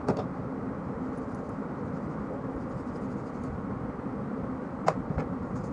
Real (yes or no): yes